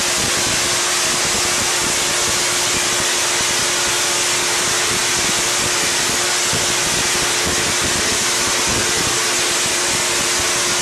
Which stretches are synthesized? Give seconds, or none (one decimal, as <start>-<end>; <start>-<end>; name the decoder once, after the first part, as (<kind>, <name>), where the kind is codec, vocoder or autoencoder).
none

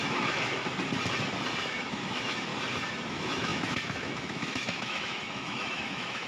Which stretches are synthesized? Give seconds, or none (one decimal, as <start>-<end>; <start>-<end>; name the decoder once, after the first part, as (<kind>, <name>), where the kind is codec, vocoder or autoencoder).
0.0-0.7 (autoencoder, DAC-VAE); 1.6-2.5; 3.1-6.3

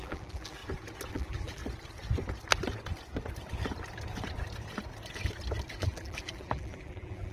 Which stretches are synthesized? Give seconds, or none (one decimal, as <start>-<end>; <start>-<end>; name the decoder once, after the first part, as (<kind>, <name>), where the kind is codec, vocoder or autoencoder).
0.0-0.6 (vocoder, BigVGAN v2); 1.1-1.6; 5.8-7.3

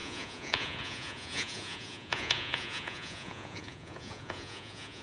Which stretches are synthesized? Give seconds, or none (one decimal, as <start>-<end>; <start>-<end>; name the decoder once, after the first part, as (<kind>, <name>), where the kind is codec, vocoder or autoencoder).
0.0-5.0 (vocoder, Vocos)

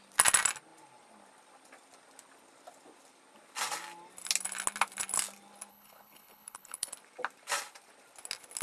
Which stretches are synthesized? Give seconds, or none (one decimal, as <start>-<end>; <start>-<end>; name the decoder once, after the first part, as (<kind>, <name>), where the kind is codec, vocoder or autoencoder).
5.7-6.9 (codec, HILCodec)